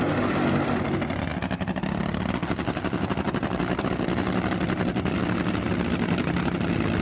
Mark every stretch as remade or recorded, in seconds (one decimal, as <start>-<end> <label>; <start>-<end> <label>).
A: 0.0-7.0 recorded